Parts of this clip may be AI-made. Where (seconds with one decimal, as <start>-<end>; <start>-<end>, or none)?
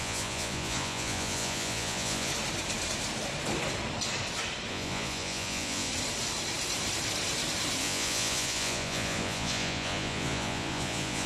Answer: 0.0-2.3; 4.7-5.9; 7.8-11.3